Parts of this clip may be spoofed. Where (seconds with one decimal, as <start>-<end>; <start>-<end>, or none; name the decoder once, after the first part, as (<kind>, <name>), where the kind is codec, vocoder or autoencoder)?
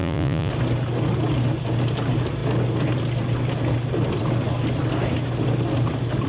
0.0-0.5 (vocoder, Vocos)